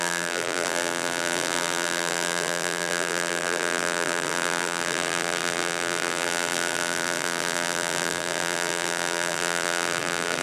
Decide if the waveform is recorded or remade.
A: remade